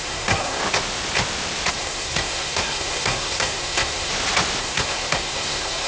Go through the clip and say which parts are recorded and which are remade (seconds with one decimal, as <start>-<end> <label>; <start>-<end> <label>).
0.0-0.6 remade; 0.6-1.7 recorded; 1.7-4.1 remade; 4.1-4.6 recorded; 4.6-5.9 remade